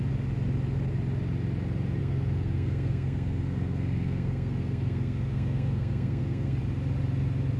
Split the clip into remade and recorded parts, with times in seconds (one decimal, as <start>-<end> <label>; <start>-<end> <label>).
0.0-2.0 recorded; 2.0-6.6 remade; 6.6-7.6 recorded